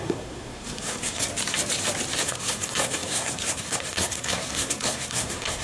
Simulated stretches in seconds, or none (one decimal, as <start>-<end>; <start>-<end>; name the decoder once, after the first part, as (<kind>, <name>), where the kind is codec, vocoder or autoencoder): 0.0-1.3 (codec, SNAC); 2.2-5.6